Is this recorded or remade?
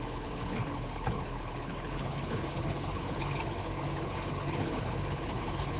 remade